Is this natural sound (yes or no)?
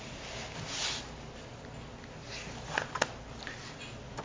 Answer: yes